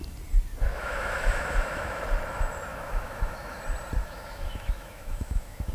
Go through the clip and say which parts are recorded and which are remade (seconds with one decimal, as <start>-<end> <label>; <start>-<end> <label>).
0.0-0.7 recorded; 0.7-2.0 remade; 2.0-2.7 recorded; 2.7-3.6 remade; 3.6-4.0 recorded; 4.0-5.7 remade